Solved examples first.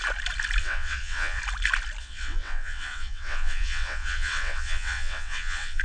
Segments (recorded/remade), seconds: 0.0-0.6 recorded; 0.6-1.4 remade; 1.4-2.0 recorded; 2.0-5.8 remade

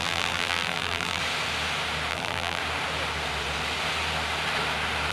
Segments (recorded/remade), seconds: 0.0-1.2 remade; 1.2-2.1 recorded; 2.1-2.6 remade; 2.6-5.1 recorded

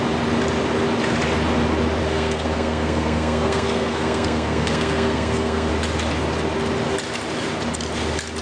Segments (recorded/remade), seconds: 0.0-2.0 recorded; 2.0-5.7 remade; 5.7-8.4 recorded

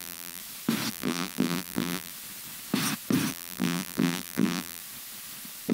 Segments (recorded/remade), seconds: 0.0-0.4 remade; 0.4-0.9 recorded; 0.9-2.1 remade; 2.1-3.3 recorded; 3.3-4.8 remade; 4.8-5.7 recorded

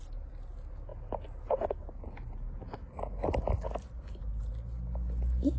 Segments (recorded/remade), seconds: 0.0-5.6 recorded

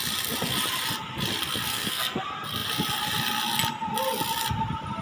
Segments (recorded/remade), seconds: 0.0-1.7 recorded; 1.7-2.2 remade; 2.2-5.0 recorded

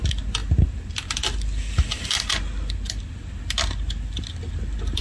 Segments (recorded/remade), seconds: 0.0-5.0 recorded